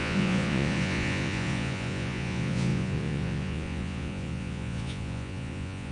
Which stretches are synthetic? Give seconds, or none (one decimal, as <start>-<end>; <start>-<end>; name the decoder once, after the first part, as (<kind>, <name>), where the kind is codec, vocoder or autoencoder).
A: 0.0-5.9 (vocoder, Vocos)